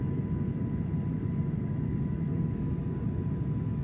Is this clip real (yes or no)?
yes